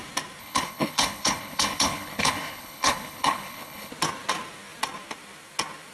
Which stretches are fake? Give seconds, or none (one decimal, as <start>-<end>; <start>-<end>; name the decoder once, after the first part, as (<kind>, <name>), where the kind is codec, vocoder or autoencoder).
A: 0.4-3.9 (codec, HILCodec)